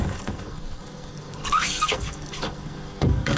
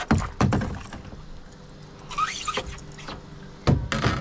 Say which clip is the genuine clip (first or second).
second